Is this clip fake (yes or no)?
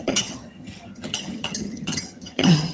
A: yes